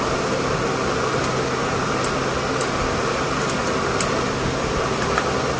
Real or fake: real